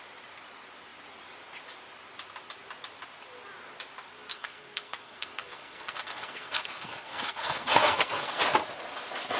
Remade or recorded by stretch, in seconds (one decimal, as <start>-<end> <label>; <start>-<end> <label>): 0.0-4.3 recorded; 4.3-8.4 remade; 8.4-9.4 recorded